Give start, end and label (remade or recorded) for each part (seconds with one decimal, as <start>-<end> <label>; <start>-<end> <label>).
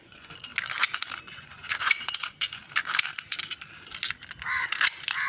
0.0-0.5 remade; 0.5-1.2 recorded; 1.2-2.6 remade; 2.6-5.3 recorded